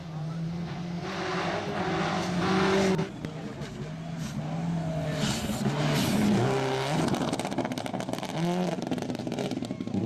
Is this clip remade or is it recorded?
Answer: recorded